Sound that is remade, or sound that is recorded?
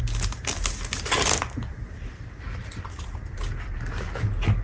recorded